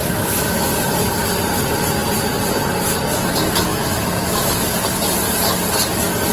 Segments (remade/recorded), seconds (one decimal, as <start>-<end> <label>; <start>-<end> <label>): 0.0-0.8 remade; 0.8-3.7 recorded; 3.7-4.5 remade; 4.5-6.3 recorded